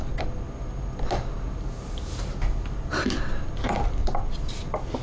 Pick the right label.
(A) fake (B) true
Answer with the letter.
B